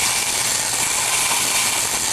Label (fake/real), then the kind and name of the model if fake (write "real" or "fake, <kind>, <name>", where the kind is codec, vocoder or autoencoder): real